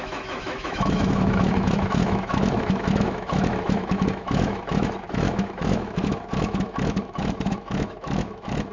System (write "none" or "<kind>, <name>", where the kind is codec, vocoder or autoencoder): autoencoder, DAC-VAE